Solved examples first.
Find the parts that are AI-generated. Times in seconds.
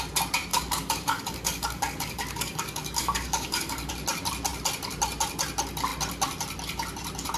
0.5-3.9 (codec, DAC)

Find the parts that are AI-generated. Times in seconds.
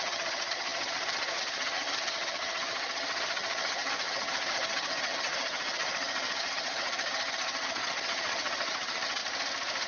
0.0-9.2 (vocoder, HiFi-GAN)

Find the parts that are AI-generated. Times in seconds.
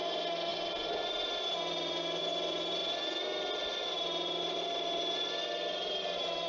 none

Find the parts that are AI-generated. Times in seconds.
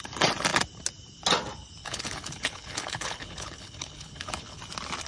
1.8-4.6 (codec, HILCodec)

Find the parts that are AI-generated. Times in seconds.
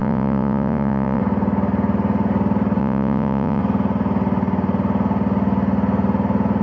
0.0-1.2 (vocoder, Vocos); 2.8-3.6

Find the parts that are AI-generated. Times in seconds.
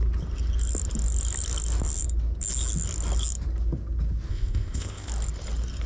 4.3-5.1 (codec, ZipCodec)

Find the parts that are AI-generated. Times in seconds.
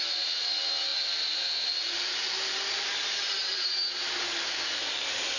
none